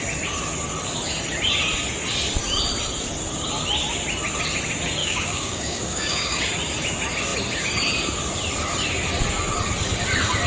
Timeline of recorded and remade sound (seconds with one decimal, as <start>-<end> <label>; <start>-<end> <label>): 0.0-5.0 recorded; 5.0-6.4 remade; 6.4-10.5 recorded